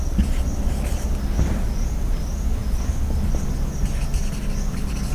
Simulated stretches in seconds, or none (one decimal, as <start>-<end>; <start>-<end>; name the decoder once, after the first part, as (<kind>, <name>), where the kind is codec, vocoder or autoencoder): none